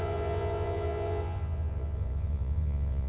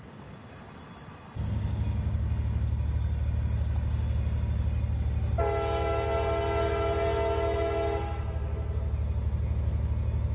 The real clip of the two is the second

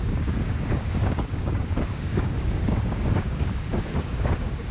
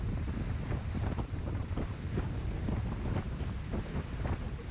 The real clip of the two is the second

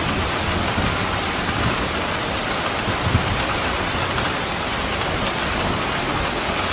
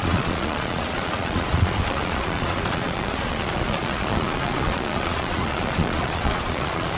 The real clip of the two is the first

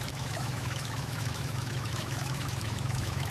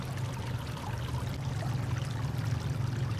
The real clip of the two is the second